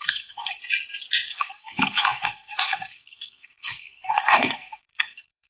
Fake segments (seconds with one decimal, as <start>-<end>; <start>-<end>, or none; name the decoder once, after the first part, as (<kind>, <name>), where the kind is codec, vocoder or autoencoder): 0.0-0.6 (codec, SNAC); 1.3-5.5